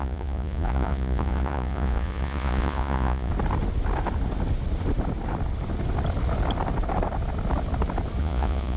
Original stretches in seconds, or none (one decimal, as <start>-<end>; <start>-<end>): 3.3-8.2